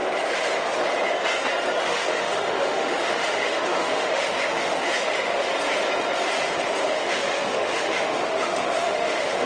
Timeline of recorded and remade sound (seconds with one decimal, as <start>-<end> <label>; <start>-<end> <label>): 0.0-1.8 recorded; 1.8-5.5 remade; 5.5-6.9 recorded; 6.9-9.5 remade